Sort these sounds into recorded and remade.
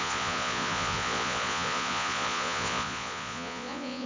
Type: remade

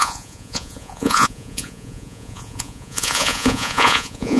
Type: remade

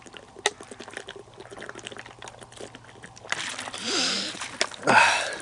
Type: recorded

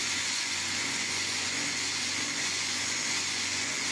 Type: remade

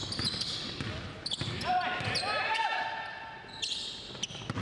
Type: recorded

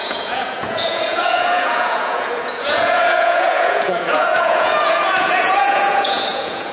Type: remade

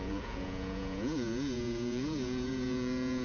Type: remade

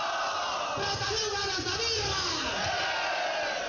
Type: recorded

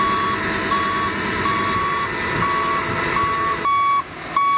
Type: recorded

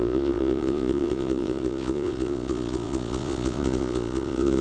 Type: remade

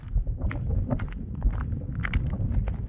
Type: recorded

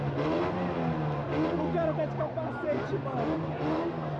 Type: recorded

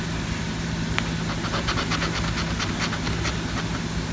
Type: recorded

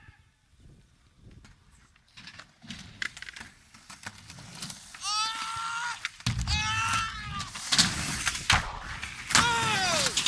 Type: recorded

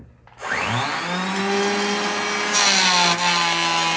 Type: recorded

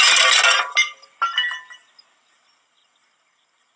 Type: recorded